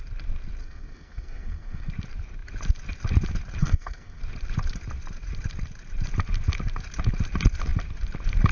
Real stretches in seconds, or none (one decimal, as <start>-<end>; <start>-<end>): 0.0-0.6; 1.9-3.6; 4.2-8.5